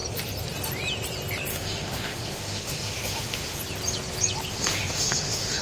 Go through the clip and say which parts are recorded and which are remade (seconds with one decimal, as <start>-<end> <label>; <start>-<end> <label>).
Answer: 0.0-1.5 recorded; 1.5-3.6 remade; 3.6-4.5 recorded; 4.5-5.6 remade